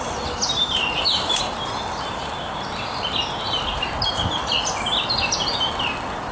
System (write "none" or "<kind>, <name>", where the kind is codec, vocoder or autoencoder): none